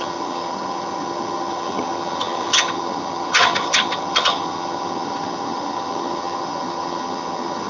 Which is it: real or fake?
fake